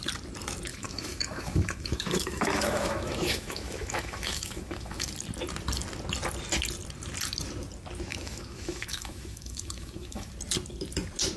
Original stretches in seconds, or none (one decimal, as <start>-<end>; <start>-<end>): 0.0-0.7; 5.1-8.1; 10.3-11.4